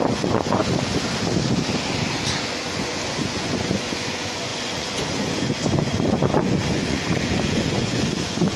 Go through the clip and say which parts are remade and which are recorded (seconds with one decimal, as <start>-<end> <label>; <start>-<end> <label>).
0.0-0.6 remade; 0.6-2.4 recorded; 2.4-8.6 remade